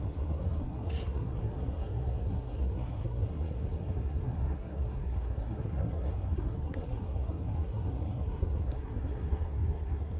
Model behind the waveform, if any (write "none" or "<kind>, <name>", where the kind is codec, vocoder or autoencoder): codec, SNAC